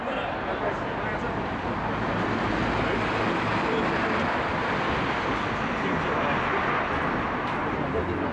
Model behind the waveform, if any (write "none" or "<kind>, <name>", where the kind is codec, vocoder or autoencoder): none